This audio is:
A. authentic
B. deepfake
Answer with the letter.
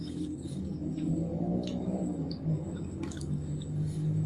B